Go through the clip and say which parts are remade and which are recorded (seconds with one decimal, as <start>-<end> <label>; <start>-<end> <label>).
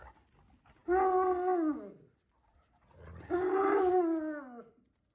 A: 0.0-5.1 recorded